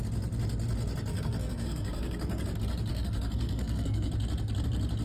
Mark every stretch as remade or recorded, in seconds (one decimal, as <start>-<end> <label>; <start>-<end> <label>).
0.0-1.1 recorded; 1.1-2.4 remade; 2.4-2.9 recorded; 2.9-4.1 remade; 4.1-5.0 recorded